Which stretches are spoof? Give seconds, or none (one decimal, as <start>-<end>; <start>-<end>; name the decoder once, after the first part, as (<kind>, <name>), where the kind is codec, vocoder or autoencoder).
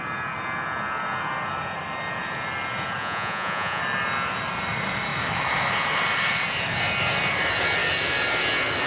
3.0-3.8 (vocoder, Vocos)